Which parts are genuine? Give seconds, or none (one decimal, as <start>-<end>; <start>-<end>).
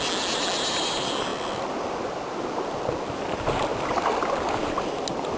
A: 0.0-5.4